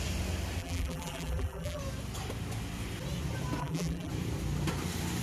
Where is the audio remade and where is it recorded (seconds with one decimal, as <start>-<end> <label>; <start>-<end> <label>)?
0.0-0.6 recorded; 0.6-1.8 remade; 1.8-3.6 recorded; 3.6-4.1 remade; 4.1-5.2 recorded